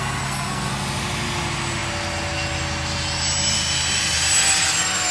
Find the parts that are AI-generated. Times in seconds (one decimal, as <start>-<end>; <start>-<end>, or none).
0.0-0.7